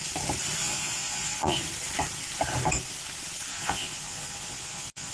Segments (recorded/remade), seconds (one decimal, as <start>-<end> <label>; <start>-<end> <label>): 0.0-0.6 recorded; 0.6-1.6 remade; 1.6-3.5 recorded; 3.5-5.1 remade